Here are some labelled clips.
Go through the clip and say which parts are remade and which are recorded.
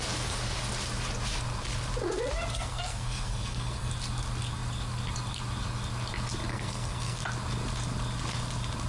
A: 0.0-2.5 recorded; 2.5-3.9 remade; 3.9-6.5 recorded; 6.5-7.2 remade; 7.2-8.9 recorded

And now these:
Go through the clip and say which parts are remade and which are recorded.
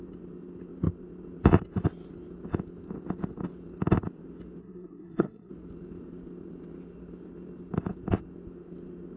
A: 0.0-4.6 recorded; 4.6-5.5 remade; 5.5-9.2 recorded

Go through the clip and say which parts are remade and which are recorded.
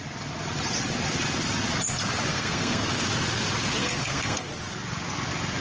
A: 0.0-2.3 recorded; 2.3-2.8 remade; 2.8-3.8 recorded; 3.8-4.5 remade; 4.5-5.6 recorded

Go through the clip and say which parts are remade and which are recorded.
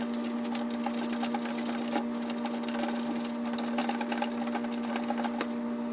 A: 0.0-5.9 recorded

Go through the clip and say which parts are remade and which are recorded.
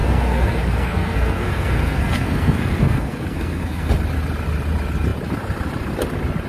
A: 0.0-3.9 remade; 3.9-6.5 recorded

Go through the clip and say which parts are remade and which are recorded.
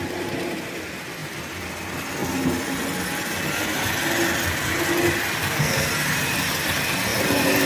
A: 0.0-5.4 recorded; 5.4-5.9 remade; 5.9-7.7 recorded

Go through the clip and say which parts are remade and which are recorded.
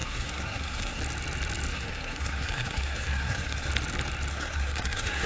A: 0.0-1.0 remade; 1.0-1.7 recorded; 1.7-3.7 remade; 3.7-4.3 recorded; 4.3-5.3 remade